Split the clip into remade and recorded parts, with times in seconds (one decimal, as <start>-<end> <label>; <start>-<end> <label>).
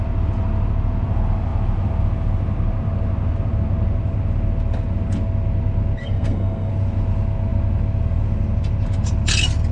0.0-6.0 recorded; 6.0-6.7 remade; 6.7-9.7 recorded